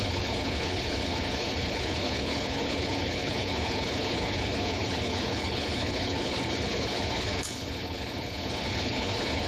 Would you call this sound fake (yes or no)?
yes